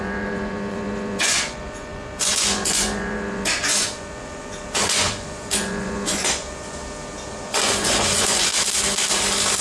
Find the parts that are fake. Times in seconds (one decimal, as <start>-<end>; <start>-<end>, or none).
0.0-6.8; 7.3-8.5